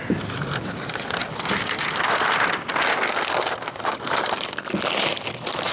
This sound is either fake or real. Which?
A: real